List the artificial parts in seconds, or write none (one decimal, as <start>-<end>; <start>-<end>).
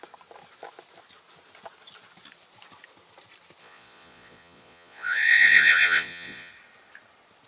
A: 3.6-6.5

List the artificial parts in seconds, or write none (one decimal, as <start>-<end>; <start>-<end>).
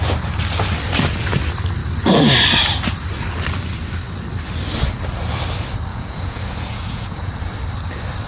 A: 5.9-7.4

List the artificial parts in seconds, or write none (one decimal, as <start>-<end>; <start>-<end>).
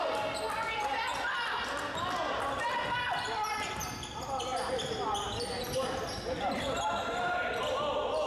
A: none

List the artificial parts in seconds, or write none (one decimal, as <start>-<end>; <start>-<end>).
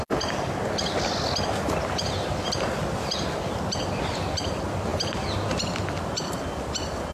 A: none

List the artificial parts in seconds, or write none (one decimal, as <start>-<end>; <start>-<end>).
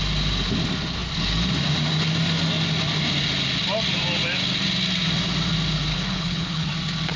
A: 5.9-6.7